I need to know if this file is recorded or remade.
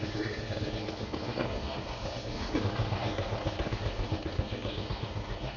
remade